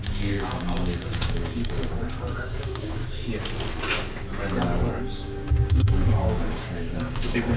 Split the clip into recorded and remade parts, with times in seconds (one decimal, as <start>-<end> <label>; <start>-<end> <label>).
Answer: 0.0-3.0 remade; 3.0-5.0 recorded; 5.0-7.6 remade